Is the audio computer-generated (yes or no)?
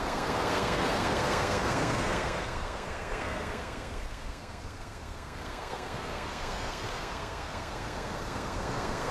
yes